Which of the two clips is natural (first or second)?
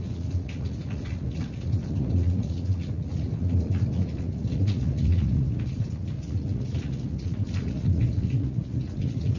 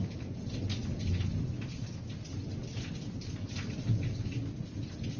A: second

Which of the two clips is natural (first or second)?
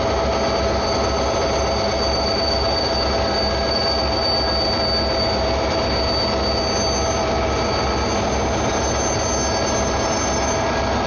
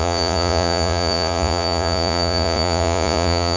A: first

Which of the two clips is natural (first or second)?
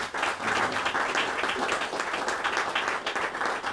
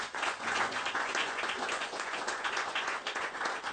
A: first